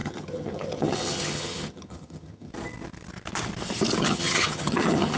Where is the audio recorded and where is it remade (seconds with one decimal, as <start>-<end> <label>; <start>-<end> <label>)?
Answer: 0.0-2.5 remade; 2.5-4.0 recorded; 4.0-5.2 remade

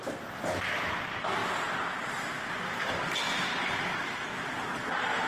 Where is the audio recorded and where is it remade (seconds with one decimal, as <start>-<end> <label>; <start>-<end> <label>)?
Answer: 0.0-5.3 recorded

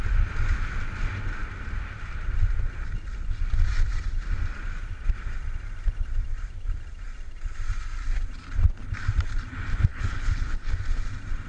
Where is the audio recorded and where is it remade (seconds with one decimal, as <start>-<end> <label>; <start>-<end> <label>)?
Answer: 0.0-9.9 recorded; 9.9-10.7 remade; 10.7-11.5 recorded